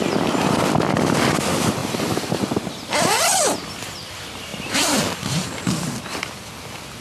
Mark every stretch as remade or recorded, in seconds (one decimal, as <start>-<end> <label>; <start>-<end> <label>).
0.0-1.8 recorded; 1.8-2.7 remade; 2.7-4.5 recorded; 4.5-5.9 remade; 5.9-7.0 recorded